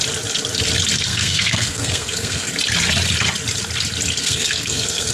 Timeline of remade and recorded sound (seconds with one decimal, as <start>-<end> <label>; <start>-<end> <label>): 0.0-1.1 recorded; 1.1-2.5 remade; 2.5-4.2 recorded; 4.2-5.1 remade